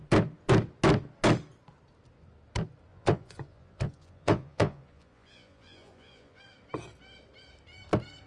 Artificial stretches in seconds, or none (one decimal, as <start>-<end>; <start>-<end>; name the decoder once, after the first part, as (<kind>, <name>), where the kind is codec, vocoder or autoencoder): 2.9-6.4 (vocoder, Vocos)